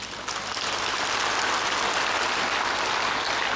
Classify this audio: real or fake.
real